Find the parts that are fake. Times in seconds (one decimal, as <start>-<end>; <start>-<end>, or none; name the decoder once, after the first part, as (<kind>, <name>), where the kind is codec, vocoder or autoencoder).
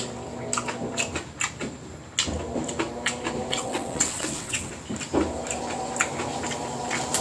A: 3.5-4.7 (vocoder, WaveNeXt)